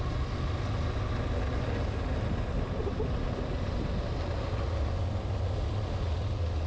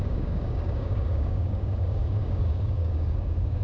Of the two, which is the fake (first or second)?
second